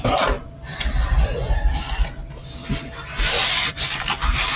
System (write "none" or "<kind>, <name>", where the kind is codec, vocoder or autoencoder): none